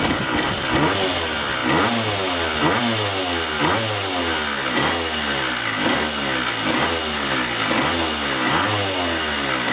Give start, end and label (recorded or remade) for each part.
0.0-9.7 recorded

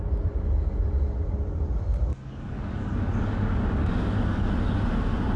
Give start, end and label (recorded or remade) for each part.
0.0-2.1 recorded; 2.1-4.5 remade; 4.5-5.4 recorded

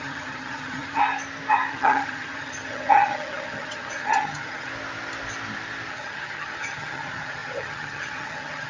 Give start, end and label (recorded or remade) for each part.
0.0-1.0 remade; 1.0-1.7 recorded; 1.7-4.7 remade; 4.7-5.9 recorded; 5.9-8.7 remade

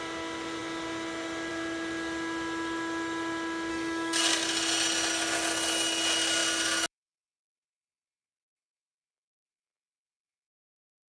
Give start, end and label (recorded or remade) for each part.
0.0-3.7 recorded; 3.7-4.3 remade; 4.3-11.1 recorded